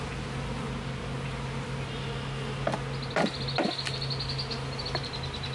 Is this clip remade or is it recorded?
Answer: recorded